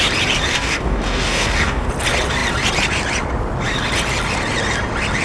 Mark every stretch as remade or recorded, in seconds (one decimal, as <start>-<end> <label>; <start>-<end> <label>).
0.0-0.5 recorded; 0.5-1.9 remade; 1.9-5.2 recorded